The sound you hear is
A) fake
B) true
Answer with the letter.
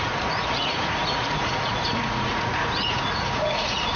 A